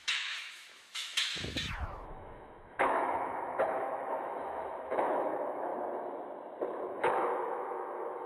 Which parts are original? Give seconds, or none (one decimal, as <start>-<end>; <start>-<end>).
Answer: 5.7-6.9